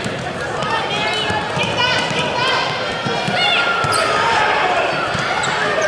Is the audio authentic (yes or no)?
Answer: yes